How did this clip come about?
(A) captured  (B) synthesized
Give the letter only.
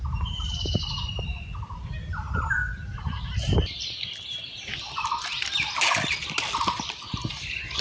A